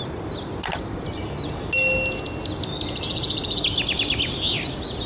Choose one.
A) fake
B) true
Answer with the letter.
B